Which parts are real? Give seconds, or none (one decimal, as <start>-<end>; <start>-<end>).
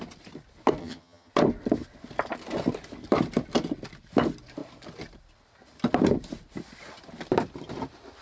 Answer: 0.0-0.8; 1.3-8.2